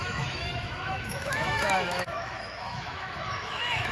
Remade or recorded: remade